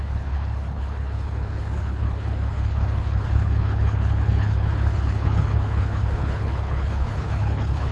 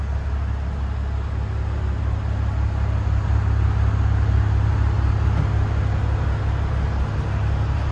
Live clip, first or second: second